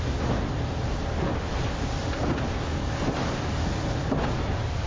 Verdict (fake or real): fake